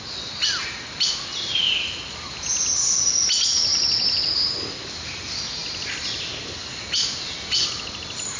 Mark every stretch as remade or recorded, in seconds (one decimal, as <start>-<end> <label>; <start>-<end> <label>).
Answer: 0.0-8.4 recorded